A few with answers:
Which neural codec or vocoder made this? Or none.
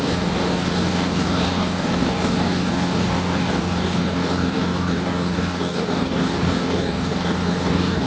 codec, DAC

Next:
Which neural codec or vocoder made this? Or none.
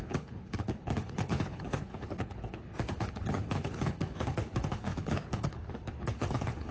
codec, HILCodec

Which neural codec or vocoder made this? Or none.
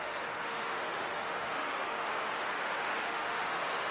autoencoder, DAC-VAE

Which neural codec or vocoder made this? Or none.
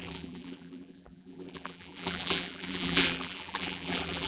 vocoder, BigVGAN v2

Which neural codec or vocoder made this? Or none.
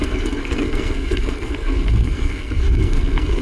codec, SNAC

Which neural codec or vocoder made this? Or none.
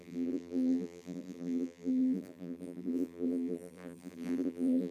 vocoder, BigVGAN v2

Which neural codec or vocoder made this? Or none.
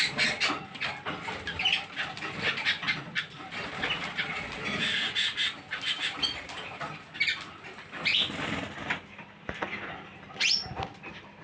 none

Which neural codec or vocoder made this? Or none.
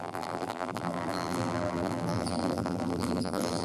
vocoder, BigVGAN v2